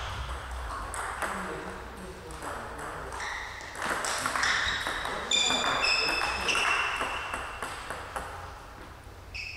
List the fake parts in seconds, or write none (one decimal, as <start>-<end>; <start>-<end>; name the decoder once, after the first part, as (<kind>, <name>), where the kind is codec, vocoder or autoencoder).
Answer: 0.0-0.7 (vocoder, BigVGAN v2); 5.1-7.6